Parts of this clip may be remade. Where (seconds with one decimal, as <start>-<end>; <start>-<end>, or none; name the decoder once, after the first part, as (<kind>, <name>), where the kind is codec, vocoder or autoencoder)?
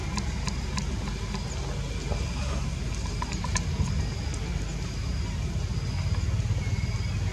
none